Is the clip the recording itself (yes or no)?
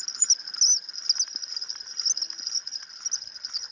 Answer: yes